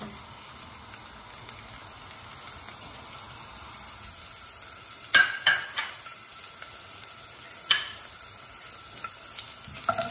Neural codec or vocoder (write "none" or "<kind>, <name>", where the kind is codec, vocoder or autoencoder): none